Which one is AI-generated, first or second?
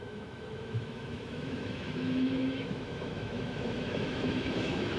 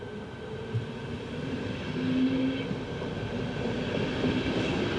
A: first